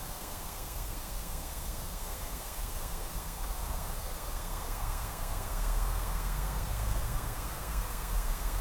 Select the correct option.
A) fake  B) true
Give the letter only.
A